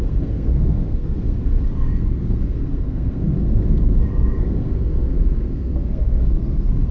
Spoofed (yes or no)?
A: yes